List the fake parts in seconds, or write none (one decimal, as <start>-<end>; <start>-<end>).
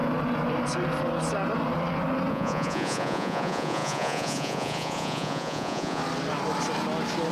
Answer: 2.3-6.0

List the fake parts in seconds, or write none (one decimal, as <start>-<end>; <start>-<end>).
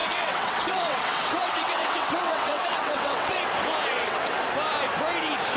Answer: 0.0-3.4; 3.9-4.4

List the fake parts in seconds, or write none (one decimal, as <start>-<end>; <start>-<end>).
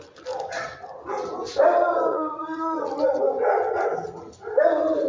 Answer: 2.1-2.9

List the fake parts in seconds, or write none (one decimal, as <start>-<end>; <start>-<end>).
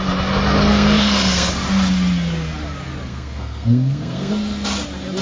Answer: 0.7-1.5; 3.1-4.3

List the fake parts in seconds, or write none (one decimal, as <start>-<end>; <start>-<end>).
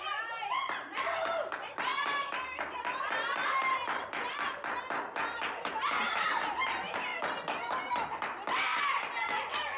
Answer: 0.0-1.9; 5.5-7.1; 7.6-8.7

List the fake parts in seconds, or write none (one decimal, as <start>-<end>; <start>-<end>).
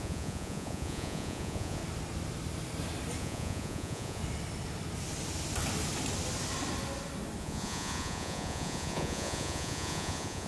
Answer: 0.0-1.8; 3.2-4.2; 7.4-10.5